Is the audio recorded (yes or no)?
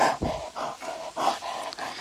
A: yes